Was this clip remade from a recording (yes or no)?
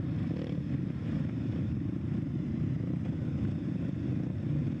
yes